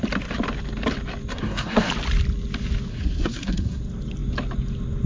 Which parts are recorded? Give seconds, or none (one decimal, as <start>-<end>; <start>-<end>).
0.0-1.3; 1.9-2.9; 3.8-5.1